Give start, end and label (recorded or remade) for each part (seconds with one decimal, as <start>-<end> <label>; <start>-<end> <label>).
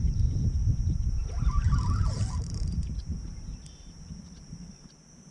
0.0-5.3 remade